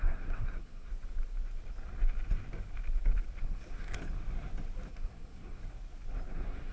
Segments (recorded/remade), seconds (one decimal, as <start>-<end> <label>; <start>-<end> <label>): 0.0-0.9 remade; 0.9-3.4 recorded; 3.4-4.0 remade; 4.0-4.9 recorded; 4.9-5.6 remade; 5.6-6.3 recorded; 6.3-6.7 remade